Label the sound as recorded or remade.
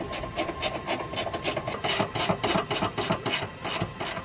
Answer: recorded